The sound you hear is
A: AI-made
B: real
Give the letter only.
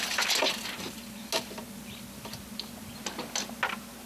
B